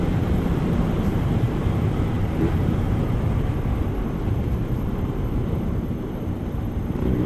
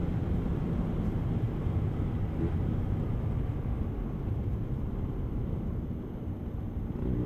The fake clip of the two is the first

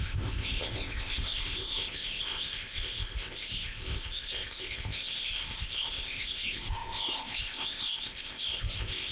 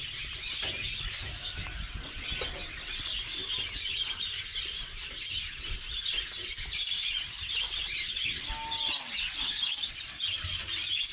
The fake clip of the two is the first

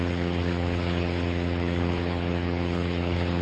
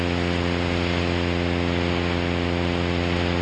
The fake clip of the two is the first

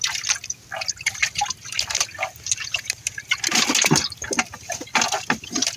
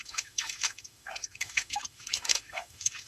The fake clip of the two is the second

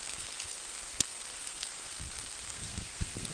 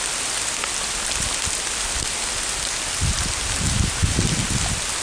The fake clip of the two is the first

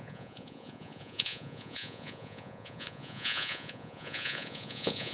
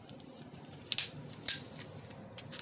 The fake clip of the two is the first